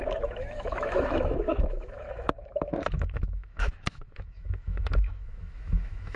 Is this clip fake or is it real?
fake